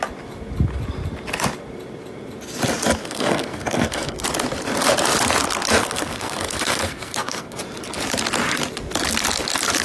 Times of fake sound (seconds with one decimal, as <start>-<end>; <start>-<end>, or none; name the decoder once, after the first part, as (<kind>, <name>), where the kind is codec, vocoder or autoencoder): 3.0-4.2 (codec, SNAC); 5.8-7.6